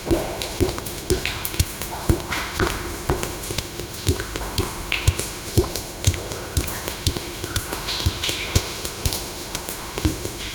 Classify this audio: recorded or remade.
remade